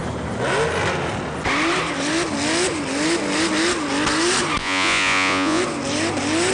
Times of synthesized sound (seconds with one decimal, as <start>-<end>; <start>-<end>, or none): 4.6-5.6